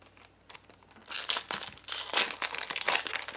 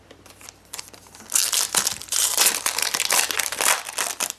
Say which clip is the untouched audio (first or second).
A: first